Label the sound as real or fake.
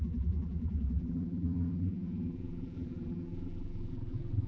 fake